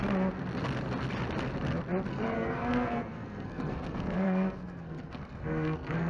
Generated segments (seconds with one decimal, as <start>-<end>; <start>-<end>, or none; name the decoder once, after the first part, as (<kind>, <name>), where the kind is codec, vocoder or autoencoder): 2.1-6.1 (codec, SNAC)